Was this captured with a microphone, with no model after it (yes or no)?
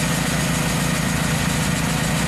yes